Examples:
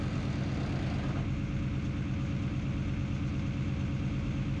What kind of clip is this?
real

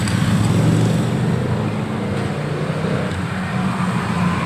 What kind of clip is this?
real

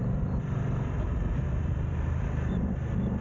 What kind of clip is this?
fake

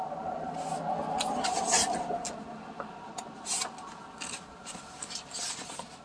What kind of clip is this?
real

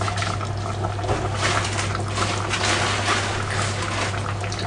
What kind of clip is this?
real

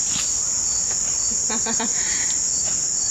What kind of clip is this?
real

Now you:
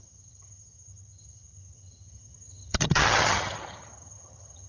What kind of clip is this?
fake